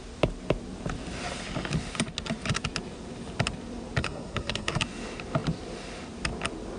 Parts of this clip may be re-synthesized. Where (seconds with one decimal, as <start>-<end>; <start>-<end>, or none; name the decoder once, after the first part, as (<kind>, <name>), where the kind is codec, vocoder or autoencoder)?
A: 4.0-4.8 (codec, SNAC)